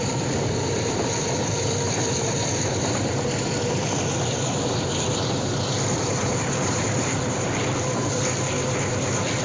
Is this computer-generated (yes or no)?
yes